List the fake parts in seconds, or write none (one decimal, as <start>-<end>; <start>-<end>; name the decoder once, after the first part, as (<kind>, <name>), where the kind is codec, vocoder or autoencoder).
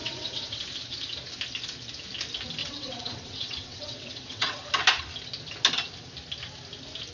0.0-0.6 (vocoder, WaveNeXt); 2.6-4.6